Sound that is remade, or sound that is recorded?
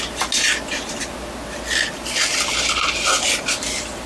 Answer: recorded